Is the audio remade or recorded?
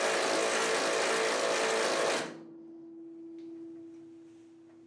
recorded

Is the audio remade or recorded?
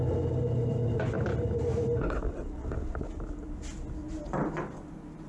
recorded